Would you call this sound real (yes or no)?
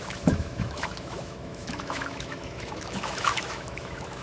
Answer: no